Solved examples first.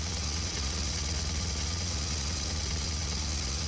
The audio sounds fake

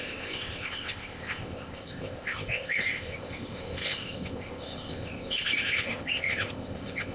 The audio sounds fake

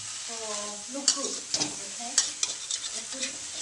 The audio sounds real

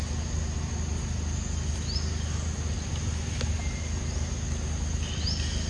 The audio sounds real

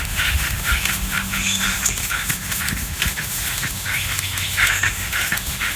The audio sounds fake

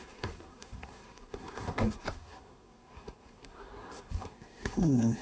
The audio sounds fake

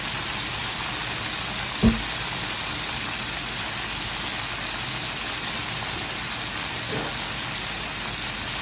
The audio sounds real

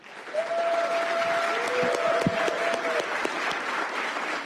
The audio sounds real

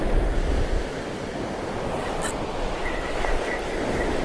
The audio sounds real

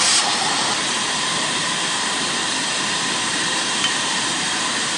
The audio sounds fake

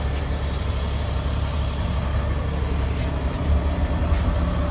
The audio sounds real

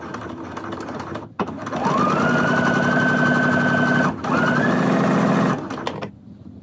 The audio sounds real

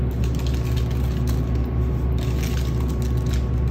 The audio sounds real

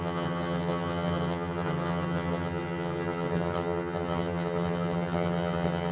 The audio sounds fake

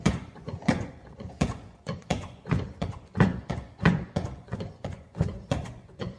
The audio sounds fake